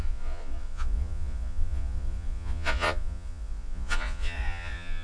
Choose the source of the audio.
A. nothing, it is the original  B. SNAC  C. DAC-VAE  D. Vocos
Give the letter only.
D